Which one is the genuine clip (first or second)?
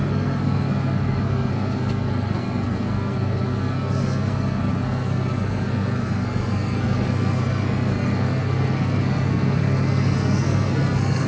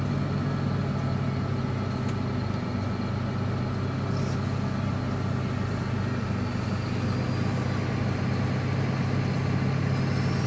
second